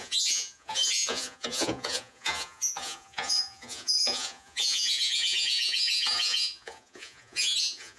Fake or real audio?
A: fake